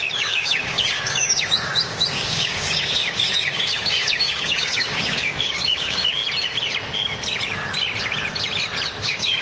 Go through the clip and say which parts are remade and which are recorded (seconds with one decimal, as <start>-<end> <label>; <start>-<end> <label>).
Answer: 0.0-6.2 remade; 6.2-9.0 recorded; 9.0-9.4 remade